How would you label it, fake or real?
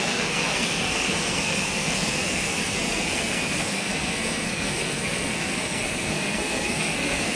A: fake